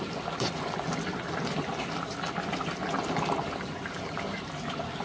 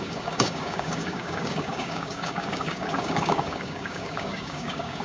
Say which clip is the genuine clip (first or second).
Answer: first